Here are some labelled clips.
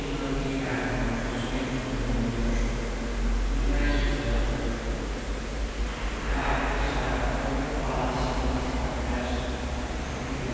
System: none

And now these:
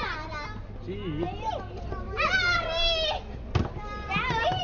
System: none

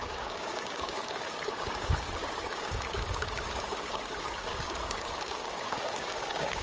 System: codec, DAC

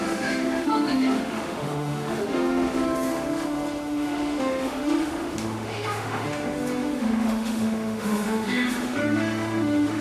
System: autoencoder, DAC-VAE